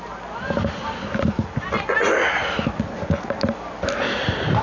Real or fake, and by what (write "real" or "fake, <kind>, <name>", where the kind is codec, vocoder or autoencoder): real